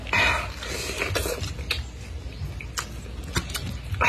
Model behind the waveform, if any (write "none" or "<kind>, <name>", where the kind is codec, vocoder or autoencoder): none